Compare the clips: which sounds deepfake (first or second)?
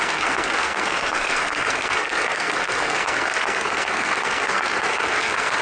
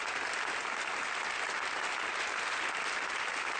first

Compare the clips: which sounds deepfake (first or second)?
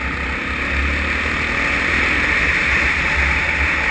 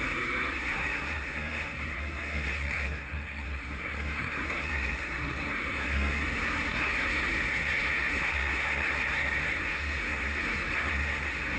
second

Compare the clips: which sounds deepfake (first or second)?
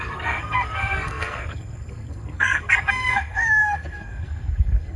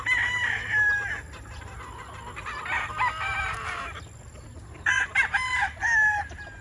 first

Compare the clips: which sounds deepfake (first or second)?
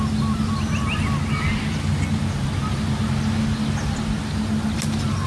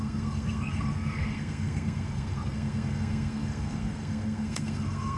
second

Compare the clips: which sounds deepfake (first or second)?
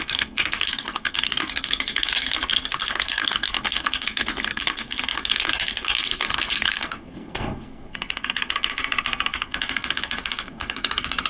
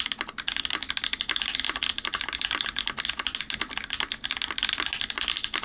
first